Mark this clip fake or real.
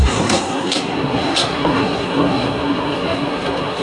fake